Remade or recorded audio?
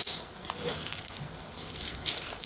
remade